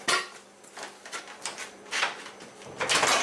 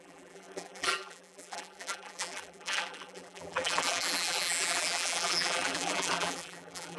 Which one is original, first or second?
first